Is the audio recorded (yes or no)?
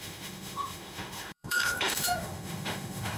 no